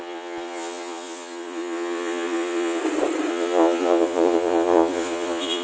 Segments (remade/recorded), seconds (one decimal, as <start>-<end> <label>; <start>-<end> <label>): 0.0-2.8 remade; 2.8-3.3 recorded; 3.3-5.6 remade